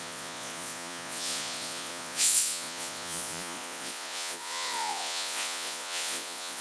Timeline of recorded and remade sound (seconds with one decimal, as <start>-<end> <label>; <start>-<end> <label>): 0.0-6.6 remade